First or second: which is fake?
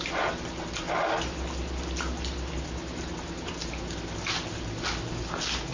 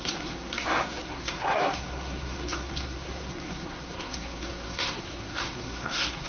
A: second